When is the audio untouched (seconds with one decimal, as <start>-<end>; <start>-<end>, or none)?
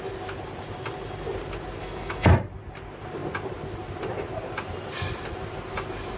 0.0-1.8; 2.3-6.2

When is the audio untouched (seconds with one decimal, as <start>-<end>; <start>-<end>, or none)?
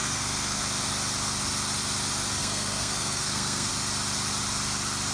0.6-2.4; 3.7-5.1